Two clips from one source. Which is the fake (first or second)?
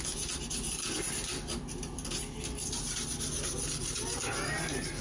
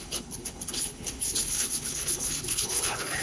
second